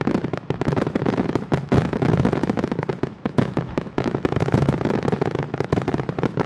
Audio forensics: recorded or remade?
remade